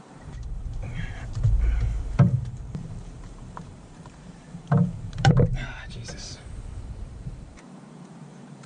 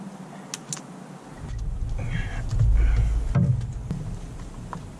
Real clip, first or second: second